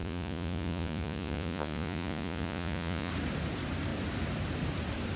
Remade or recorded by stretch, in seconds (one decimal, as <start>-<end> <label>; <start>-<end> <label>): 0.0-3.1 remade; 3.1-5.2 recorded